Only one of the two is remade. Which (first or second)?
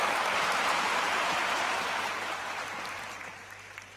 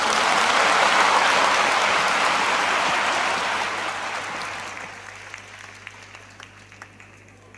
first